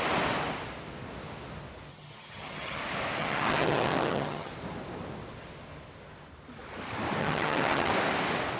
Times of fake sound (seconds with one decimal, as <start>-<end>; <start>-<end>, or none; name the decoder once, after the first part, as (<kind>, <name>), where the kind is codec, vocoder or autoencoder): 1.9-2.8 (vocoder, HiFi-GAN); 3.2-4.5; 7.2-7.9